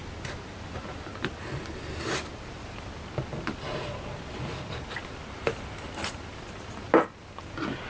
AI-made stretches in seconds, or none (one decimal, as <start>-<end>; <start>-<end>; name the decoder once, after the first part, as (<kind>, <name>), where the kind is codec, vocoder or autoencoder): none